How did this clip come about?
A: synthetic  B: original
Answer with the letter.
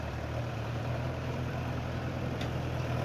A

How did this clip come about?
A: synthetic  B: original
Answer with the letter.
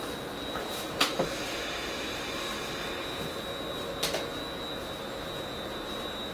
B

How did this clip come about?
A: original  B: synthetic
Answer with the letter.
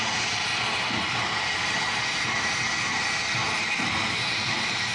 A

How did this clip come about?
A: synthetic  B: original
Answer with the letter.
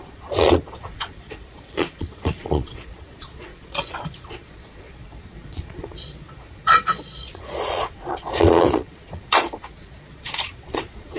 A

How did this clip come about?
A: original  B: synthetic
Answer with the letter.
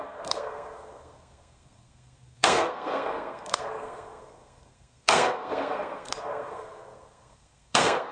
B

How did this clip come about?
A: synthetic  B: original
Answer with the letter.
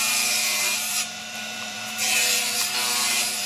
A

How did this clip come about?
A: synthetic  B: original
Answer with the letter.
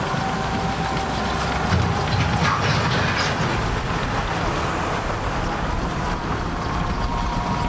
B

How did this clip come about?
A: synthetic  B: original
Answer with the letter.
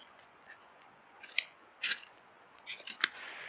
A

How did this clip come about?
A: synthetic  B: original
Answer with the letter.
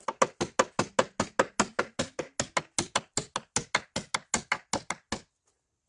B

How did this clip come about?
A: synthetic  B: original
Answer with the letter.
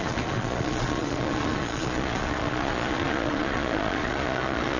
A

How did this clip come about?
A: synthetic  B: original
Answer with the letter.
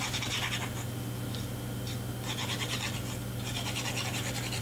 B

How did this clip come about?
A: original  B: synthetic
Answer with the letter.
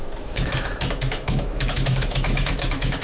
B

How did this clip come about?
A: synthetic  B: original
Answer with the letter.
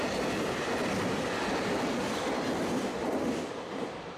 B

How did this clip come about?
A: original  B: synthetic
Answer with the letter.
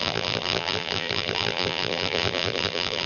B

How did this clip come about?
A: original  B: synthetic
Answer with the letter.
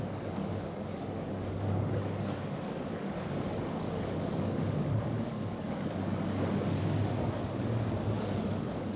B